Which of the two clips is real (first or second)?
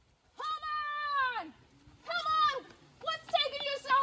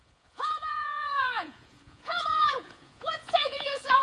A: first